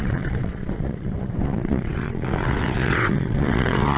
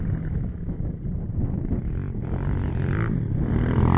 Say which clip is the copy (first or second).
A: first